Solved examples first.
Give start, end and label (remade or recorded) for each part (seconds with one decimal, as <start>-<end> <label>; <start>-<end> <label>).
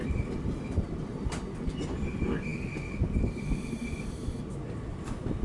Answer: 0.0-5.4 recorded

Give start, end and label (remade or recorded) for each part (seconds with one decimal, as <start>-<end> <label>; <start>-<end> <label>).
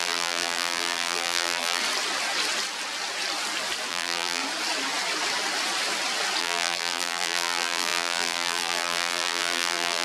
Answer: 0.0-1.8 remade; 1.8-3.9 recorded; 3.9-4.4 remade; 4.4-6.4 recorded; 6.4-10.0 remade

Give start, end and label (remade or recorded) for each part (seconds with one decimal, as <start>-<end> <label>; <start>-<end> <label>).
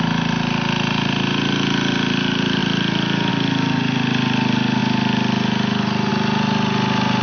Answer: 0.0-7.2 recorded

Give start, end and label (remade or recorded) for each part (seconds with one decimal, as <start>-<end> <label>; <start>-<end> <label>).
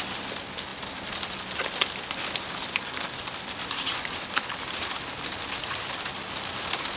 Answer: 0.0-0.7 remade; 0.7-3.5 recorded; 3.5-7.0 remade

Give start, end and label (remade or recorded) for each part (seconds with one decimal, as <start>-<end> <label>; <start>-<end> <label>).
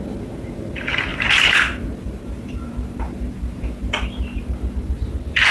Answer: 0.0-1.1 recorded; 1.1-4.4 remade; 4.4-5.5 recorded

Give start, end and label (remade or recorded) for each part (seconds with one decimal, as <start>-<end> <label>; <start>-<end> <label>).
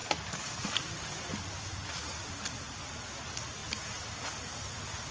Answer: 0.0-5.1 recorded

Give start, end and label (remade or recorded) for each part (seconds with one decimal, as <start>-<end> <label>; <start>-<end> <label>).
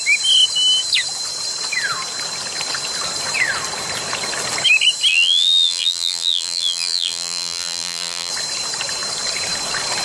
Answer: 0.0-5.1 recorded; 5.1-8.3 remade; 8.3-10.0 recorded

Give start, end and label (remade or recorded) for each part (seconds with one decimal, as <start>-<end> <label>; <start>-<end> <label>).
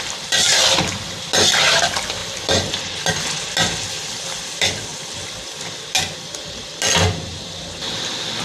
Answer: 0.0-8.4 recorded